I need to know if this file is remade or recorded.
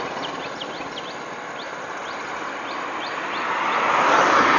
recorded